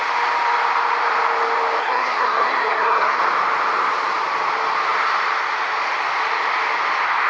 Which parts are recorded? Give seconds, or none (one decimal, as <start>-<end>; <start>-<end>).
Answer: 0.0-1.8; 3.2-7.3

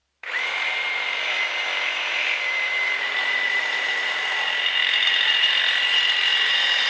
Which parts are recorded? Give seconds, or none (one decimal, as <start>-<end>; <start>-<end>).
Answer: 4.1-4.8; 5.6-6.3

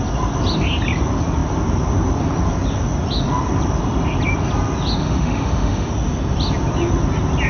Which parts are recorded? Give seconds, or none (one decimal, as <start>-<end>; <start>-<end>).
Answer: 0.0-5.0; 5.9-7.5